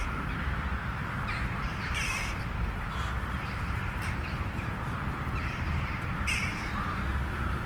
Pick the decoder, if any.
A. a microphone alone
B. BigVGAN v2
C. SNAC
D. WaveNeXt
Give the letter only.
B